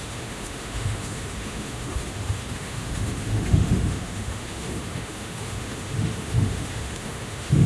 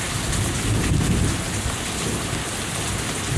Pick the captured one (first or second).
second